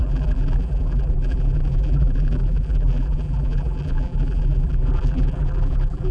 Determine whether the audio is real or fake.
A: fake